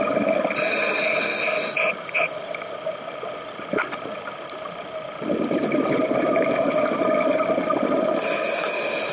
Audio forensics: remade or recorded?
recorded